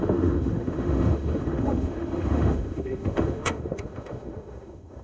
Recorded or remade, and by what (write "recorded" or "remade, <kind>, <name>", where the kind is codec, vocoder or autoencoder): remade, autoencoder, DAC-VAE